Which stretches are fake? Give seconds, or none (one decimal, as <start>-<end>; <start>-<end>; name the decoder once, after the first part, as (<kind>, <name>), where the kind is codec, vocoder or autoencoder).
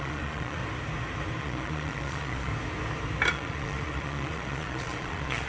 0.0-0.6 (vocoder, Vocos); 1.4-2.5; 3.3-5.5